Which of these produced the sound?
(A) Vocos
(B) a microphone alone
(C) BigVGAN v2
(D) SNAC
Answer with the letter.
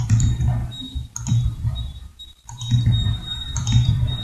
C